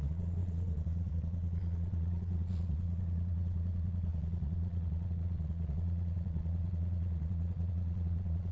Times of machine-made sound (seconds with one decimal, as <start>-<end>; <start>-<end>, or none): 0.0-8.5

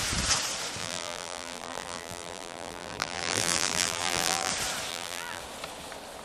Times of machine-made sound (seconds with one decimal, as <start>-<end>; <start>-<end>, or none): 0.8-4.5; 4.9-5.4

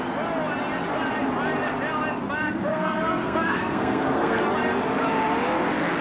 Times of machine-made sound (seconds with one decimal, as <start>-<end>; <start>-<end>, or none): 2.7-4.4

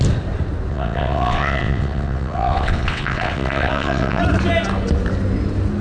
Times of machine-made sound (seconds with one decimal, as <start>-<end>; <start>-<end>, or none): 0.7-4.2

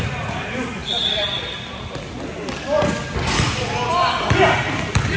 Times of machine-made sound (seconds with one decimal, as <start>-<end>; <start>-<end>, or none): none

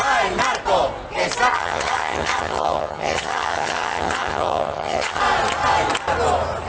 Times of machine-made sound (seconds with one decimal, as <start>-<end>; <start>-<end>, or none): 1.5-5.2